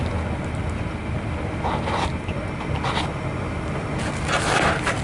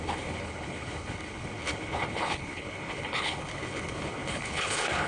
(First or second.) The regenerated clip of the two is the second